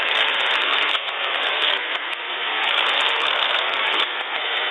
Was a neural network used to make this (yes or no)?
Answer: yes